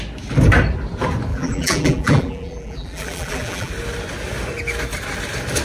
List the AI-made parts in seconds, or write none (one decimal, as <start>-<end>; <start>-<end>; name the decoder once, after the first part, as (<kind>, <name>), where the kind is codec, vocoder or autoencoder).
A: 1.3-3.7 (vocoder, BigVGAN v2)